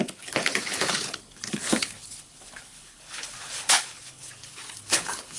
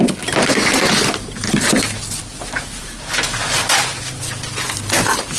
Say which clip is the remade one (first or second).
first